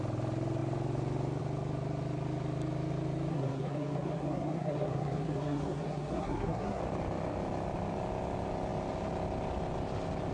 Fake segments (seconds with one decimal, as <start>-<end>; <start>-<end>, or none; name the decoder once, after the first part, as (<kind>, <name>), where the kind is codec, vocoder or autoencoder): 3.3-6.8 (codec, SNAC)